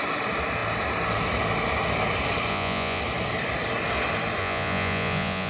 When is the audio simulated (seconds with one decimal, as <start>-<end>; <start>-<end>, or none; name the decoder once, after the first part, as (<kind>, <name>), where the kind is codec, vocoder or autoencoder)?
2.5-3.0 (vocoder, Vocos); 4.4-5.5